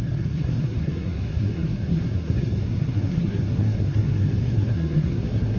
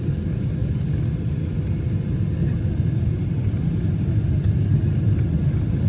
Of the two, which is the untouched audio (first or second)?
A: second